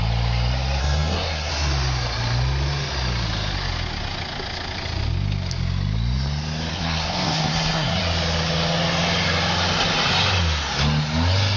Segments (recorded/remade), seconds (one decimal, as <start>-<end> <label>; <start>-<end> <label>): 0.0-0.8 recorded; 0.8-1.5 remade; 1.5-6.7 recorded; 6.7-8.0 remade; 8.0-11.6 recorded